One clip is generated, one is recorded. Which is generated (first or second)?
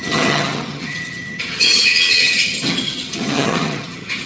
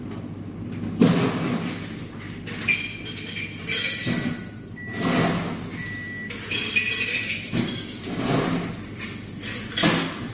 first